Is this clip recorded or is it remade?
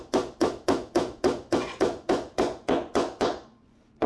remade